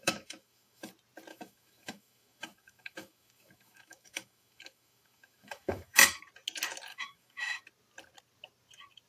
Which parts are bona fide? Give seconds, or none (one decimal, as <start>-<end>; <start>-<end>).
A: 0.9-1.3; 6.2-6.9; 7.6-9.1